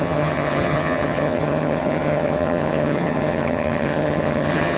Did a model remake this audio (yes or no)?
yes